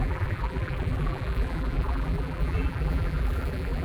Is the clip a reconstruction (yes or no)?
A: yes